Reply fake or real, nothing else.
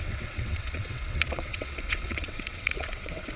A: fake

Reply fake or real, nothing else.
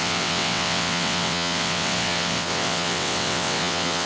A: fake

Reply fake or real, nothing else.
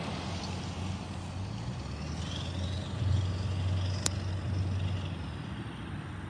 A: real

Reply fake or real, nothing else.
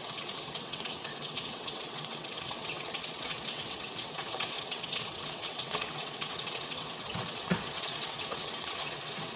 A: fake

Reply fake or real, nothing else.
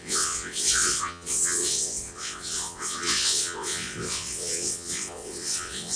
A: fake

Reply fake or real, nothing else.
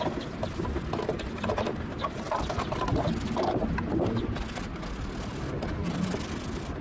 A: real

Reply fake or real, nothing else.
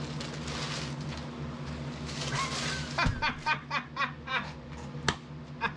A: real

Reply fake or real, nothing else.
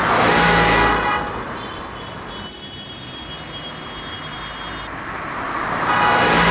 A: real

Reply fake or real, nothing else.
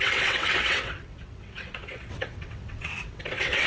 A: fake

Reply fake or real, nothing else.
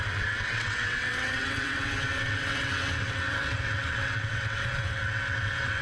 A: fake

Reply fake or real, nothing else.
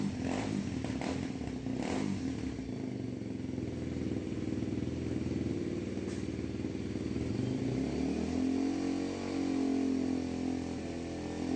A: real